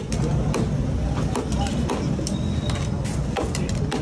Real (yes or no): yes